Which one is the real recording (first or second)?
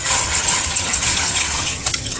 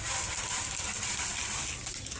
second